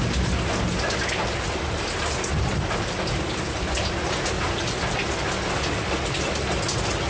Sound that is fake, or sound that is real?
real